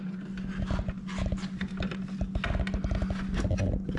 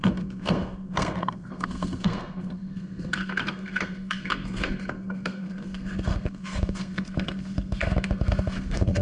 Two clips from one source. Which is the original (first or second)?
first